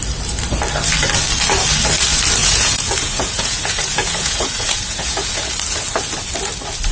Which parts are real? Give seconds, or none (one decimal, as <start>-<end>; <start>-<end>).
0.0-2.4; 5.5-6.9

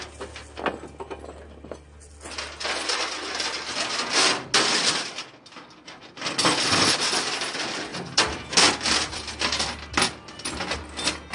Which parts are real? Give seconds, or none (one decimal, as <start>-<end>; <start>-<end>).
0.0-11.3

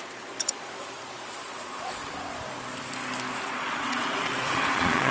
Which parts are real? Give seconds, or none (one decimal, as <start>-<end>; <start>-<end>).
2.0-3.4

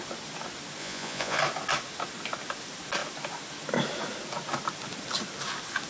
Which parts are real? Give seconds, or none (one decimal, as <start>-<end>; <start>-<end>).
0.0-0.8; 1.4-5.9

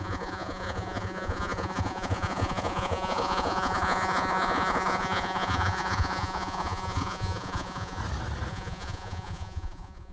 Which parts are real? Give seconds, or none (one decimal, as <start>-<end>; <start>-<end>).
8.0-8.5

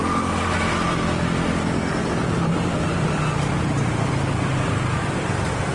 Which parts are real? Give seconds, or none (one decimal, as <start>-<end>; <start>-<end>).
0.0-5.7